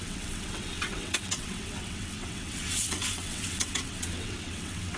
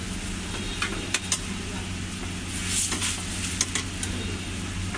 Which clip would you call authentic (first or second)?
second